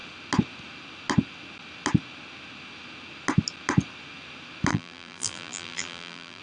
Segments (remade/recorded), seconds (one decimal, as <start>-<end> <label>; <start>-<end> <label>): 0.0-4.7 recorded; 4.7-6.4 remade